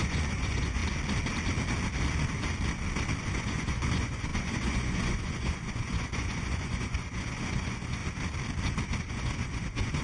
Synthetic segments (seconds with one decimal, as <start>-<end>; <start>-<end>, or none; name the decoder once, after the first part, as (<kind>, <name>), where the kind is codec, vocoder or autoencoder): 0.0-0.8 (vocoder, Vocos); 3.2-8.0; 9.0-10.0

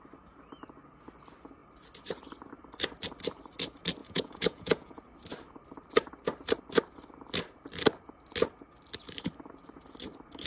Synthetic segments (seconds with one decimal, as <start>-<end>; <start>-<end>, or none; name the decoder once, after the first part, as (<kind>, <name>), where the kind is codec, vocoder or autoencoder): 4.0-5.0 (vocoder, Vocos)

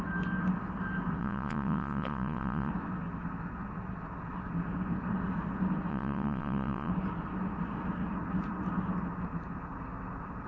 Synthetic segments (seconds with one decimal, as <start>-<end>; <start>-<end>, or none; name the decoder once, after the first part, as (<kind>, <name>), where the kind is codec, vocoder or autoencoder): 1.2-2.7 (vocoder, Vocos); 5.9-6.9